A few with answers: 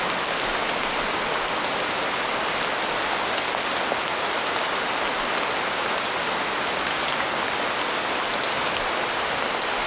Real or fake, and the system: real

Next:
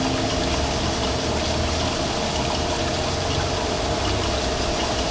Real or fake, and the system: real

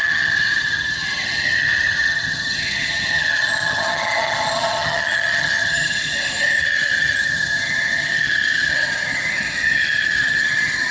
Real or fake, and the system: fake, vocoder, HiFi-GAN